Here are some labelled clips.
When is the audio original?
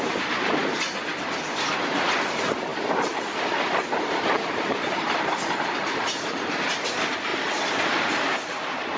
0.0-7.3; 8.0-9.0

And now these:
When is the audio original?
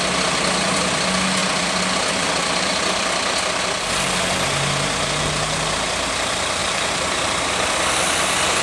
0.0-6.6; 7.5-8.6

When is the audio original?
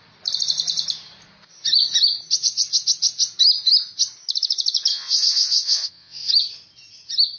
0.0-4.9; 6.3-7.4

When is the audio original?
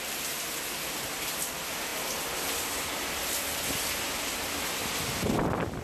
0.0-5.8